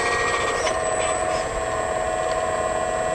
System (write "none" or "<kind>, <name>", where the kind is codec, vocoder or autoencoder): none